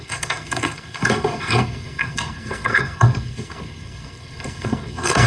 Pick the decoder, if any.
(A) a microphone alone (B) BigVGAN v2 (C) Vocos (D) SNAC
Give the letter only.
D